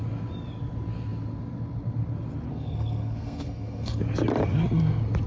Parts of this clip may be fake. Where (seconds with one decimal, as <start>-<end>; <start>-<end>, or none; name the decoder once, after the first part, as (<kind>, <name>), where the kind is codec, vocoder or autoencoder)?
2.5-4.0 (codec, SNAC)